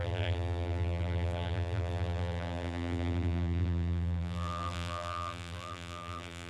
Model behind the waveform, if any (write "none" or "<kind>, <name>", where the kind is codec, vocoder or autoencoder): vocoder, BigVGAN v2